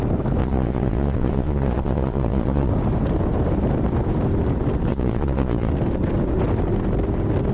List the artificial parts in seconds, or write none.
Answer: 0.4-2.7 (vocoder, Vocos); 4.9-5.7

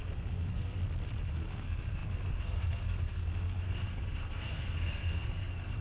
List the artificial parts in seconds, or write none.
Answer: 0.0-0.8 (codec, SNAC); 1.3-5.8

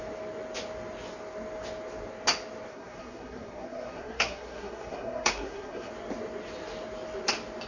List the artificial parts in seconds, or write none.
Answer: 2.7-5.9 (codec, SNAC)

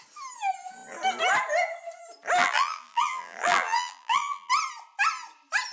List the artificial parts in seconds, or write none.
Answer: 2.4-4.5 (vocoder, BigVGAN v2)